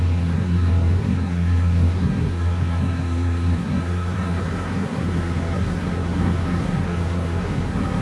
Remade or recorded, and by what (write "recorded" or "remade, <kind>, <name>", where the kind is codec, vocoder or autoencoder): remade, codec, SNAC